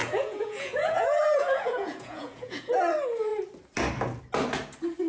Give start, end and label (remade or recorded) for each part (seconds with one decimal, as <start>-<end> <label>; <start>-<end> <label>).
0.0-2.7 remade; 2.7-5.1 recorded